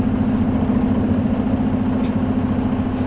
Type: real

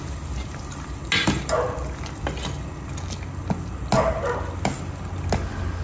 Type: real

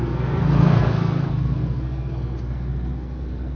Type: fake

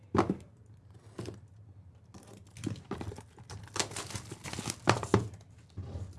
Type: real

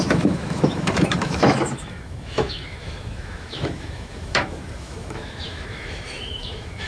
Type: fake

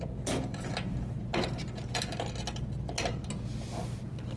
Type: real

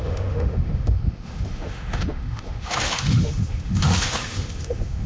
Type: fake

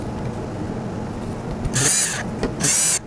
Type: real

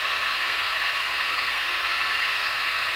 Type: fake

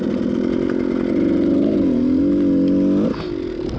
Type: real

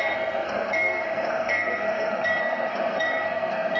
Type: fake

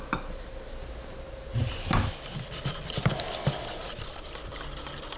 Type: real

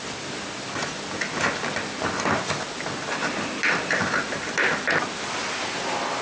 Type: real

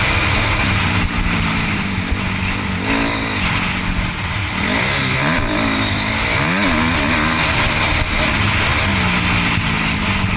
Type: real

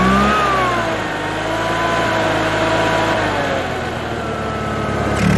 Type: real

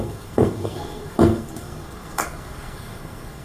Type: fake